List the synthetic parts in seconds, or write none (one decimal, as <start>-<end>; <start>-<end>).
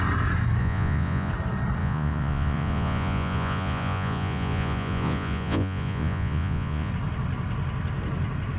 0.6-1.3; 1.8-6.9